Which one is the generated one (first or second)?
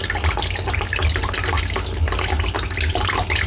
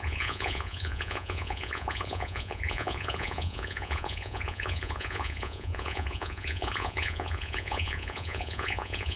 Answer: second